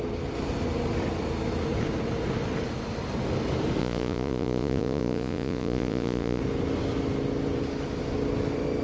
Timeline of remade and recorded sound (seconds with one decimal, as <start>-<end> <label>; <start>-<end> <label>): 0.0-3.8 recorded; 3.8-6.4 remade; 6.4-8.8 recorded